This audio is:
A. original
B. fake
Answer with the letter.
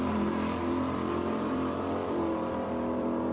B